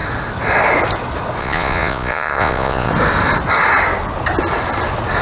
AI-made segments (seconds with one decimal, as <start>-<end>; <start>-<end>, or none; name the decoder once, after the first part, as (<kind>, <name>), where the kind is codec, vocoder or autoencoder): 1.4-2.9 (vocoder, Vocos)